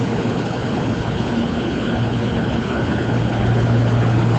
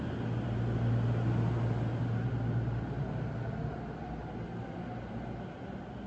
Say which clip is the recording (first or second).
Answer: second